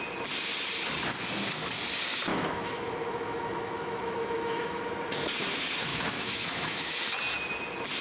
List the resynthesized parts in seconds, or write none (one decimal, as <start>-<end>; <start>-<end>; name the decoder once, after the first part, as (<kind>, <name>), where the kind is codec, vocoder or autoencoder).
2.3-4.8 (autoencoder, DAC-VAE); 5.9-7.0